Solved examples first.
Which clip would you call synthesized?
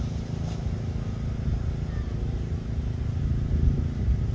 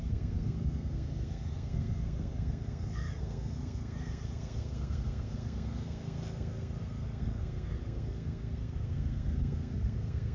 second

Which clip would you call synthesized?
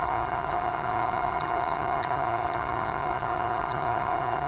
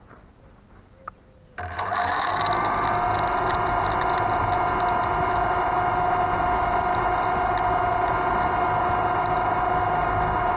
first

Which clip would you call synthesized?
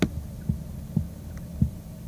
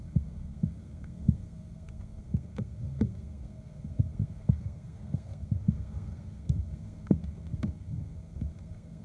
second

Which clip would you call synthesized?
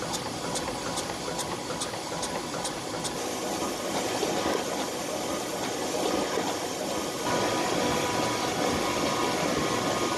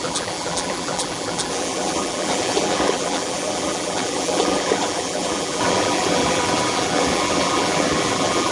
second